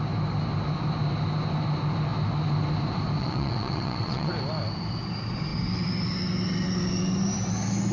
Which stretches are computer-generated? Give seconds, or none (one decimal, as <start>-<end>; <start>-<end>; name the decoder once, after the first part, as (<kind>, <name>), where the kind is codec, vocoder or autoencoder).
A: 3.2-4.3 (vocoder, WaveNeXt)

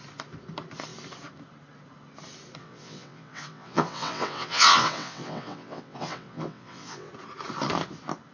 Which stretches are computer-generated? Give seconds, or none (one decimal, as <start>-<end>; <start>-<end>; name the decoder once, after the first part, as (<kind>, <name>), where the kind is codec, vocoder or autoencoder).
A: 2.6-7.1 (vocoder, WaveNeXt)